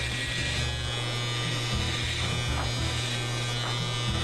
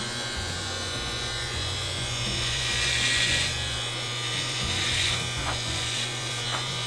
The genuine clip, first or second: first